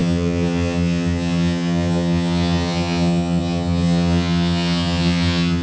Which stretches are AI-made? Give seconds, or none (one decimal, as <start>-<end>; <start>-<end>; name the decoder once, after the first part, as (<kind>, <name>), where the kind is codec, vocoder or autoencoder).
0.0-5.6 (vocoder, HiFi-GAN)